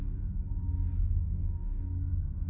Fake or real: fake